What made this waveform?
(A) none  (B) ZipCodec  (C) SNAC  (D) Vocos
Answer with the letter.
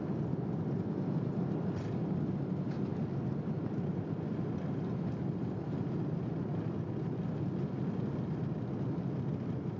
A